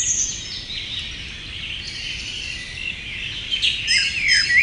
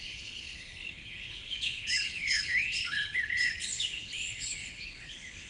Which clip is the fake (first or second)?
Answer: second